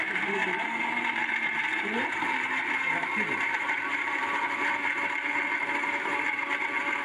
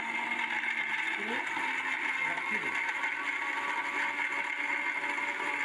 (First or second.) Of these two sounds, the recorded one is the second